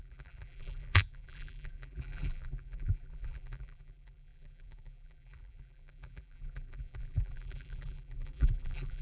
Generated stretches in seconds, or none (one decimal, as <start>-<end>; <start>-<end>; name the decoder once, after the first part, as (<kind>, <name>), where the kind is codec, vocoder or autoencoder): 0.0-9.0 (vocoder, BigVGAN v2)